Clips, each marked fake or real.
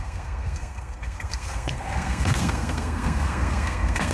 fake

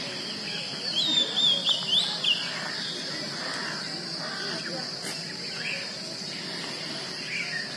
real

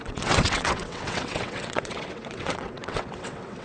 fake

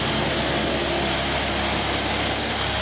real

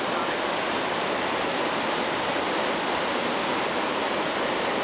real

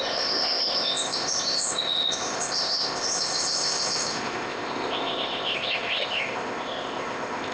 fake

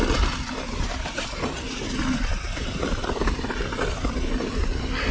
real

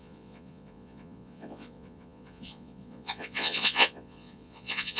fake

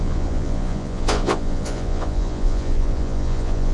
fake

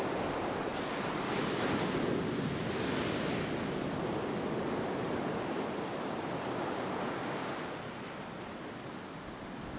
real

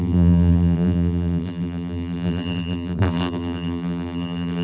fake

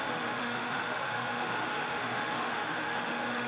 fake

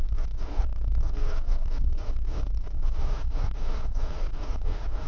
fake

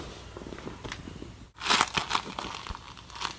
real